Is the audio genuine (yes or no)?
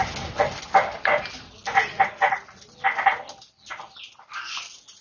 yes